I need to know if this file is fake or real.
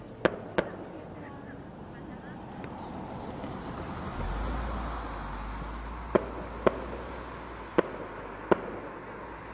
real